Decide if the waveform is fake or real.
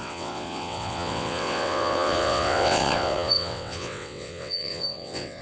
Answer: fake